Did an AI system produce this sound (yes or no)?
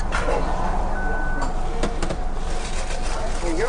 no